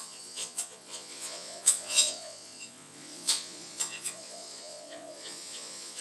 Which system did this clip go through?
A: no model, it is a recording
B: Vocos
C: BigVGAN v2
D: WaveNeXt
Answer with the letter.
B